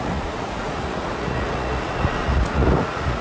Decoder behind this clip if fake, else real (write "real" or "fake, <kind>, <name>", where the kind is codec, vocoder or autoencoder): fake, vocoder, Vocos